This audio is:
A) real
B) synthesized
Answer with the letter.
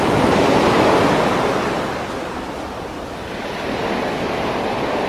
A